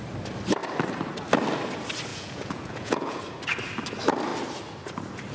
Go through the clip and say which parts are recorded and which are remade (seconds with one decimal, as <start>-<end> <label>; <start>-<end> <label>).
0.0-2.1 recorded; 2.1-3.2 remade; 3.2-5.3 recorded